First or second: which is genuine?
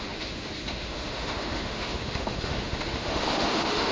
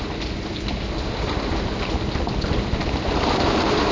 second